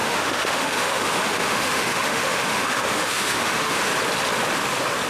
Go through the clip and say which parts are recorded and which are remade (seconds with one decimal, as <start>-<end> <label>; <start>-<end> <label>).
0.0-3.9 remade; 3.9-5.1 recorded